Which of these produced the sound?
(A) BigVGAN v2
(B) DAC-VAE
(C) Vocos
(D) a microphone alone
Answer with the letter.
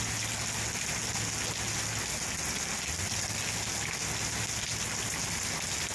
D